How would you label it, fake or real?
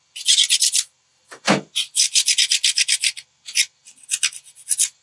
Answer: real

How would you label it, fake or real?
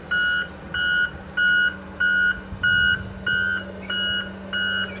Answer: real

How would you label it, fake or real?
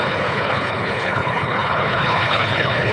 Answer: fake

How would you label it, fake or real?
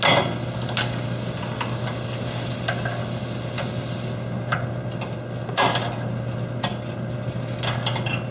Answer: real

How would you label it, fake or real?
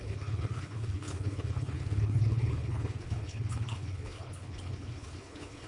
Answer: fake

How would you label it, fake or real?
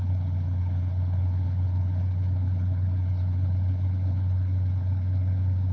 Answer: fake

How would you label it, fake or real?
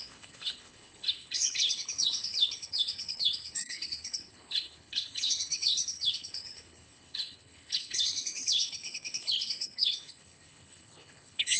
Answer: fake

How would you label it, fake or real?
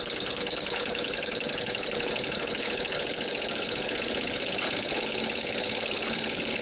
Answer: fake